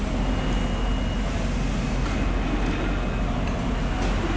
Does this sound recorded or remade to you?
recorded